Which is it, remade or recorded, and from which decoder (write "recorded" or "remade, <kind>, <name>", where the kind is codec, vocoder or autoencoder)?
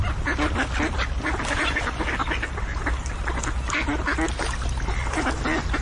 recorded